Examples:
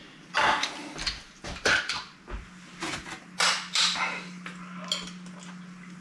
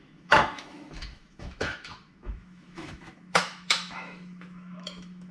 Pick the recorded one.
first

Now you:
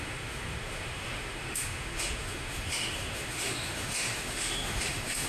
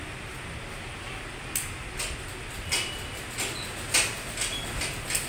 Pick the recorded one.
second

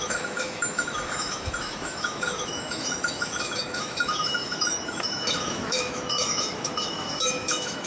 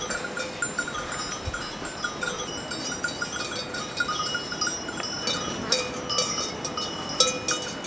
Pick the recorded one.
second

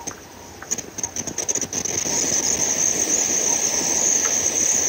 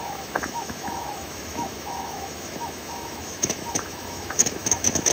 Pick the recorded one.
first